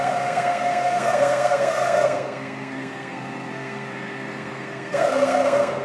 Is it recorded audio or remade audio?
remade